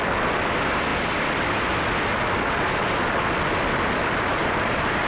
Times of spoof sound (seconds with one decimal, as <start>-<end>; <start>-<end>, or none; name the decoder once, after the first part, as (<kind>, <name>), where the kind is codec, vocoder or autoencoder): 4.4-5.1 (vocoder, BigVGAN v2)